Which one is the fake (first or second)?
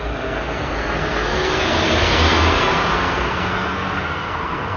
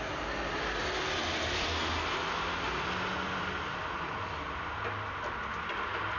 first